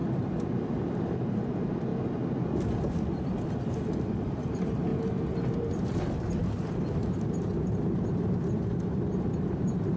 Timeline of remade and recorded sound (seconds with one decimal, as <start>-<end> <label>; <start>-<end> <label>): 0.0-1.1 recorded; 1.1-1.9 remade; 1.9-4.2 recorded; 4.2-4.9 remade; 4.9-5.6 recorded; 5.6-10.0 remade